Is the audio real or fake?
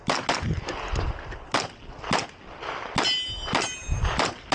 real